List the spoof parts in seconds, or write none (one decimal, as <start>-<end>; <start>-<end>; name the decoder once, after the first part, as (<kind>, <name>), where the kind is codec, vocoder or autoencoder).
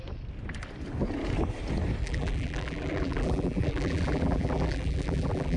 2.0-5.6 (vocoder, BigVGAN v2)